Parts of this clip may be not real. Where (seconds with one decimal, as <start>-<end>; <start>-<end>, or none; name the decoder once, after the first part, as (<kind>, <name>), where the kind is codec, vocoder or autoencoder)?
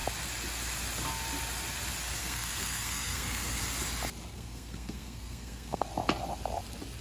2.2-3.6 (codec, SNAC); 4.3-5.9